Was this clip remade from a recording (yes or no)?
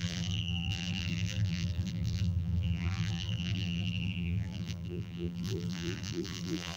yes